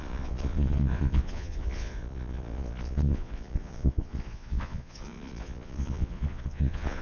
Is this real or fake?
fake